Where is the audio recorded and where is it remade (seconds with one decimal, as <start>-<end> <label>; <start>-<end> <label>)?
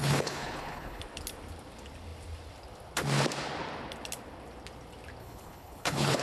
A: 0.0-1.0 remade; 1.0-5.2 recorded; 5.2-6.2 remade